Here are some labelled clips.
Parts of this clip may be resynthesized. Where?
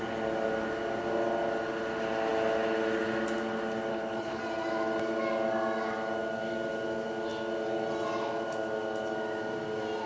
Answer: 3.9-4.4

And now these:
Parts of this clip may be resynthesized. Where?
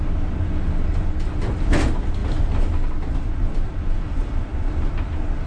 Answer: none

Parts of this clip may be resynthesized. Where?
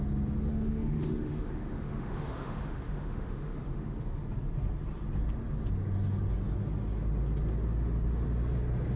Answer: 0.5-4.2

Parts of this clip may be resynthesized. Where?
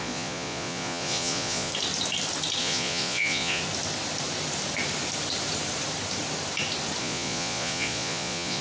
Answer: 0.0-1.7; 2.6-3.6; 7.0-8.6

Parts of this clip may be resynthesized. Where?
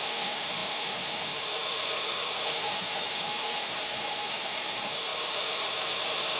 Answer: 0.0-6.4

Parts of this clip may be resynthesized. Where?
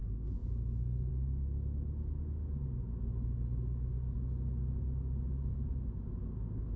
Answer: none